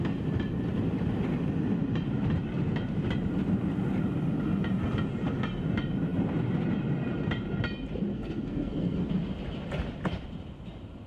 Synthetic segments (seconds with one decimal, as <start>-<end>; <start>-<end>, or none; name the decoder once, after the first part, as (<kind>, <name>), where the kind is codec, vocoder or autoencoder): 8.1-9.1 (codec, SNAC)